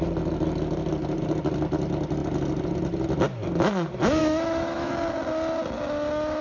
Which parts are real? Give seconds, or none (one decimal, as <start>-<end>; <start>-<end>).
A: 0.0-4.2; 4.9-6.4